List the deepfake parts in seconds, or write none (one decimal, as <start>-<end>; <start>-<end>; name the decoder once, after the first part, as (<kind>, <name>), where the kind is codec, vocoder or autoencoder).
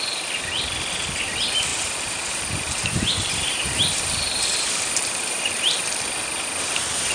1.7-5.8 (vocoder, BigVGAN v2)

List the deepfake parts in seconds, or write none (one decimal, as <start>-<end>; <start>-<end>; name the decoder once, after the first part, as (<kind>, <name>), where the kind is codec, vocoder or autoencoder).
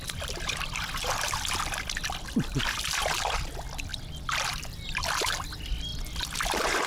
none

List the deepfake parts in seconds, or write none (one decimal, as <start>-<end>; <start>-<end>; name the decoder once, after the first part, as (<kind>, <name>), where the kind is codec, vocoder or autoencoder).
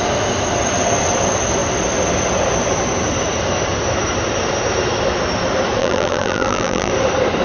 5.8-6.9 (vocoder, BigVGAN v2)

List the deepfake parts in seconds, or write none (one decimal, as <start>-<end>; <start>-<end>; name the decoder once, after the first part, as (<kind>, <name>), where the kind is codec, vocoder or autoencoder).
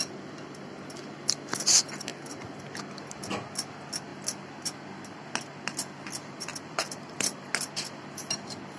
6.5-7.5 (vocoder, BigVGAN v2)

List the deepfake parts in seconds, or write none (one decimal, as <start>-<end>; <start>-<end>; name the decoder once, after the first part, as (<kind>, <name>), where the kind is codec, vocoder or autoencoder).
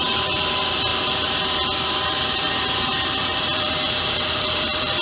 0.0-5.0 (vocoder, BigVGAN v2)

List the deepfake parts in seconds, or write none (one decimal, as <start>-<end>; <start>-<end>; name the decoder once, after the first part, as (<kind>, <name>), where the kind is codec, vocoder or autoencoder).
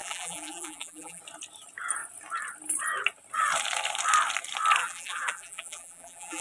0.0-1.2 (vocoder, BigVGAN v2); 4.8-6.4